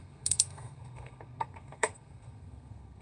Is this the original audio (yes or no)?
no